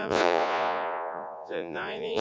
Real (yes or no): no